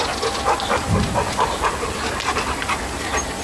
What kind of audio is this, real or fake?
real